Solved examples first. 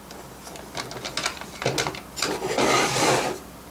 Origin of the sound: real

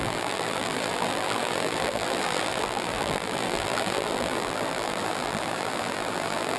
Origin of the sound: fake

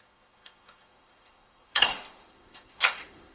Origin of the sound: fake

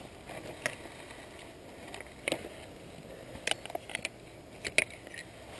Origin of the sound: real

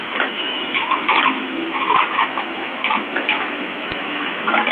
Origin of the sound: fake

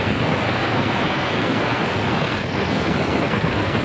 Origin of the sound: fake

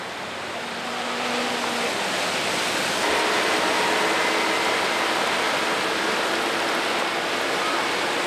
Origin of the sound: real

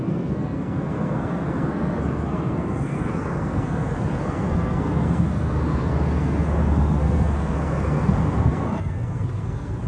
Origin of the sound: fake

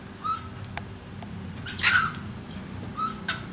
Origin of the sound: real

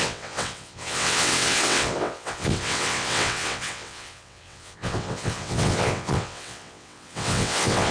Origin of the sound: fake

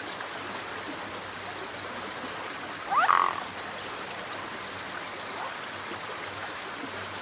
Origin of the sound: real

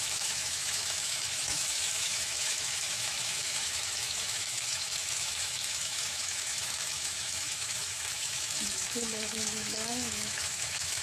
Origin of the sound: fake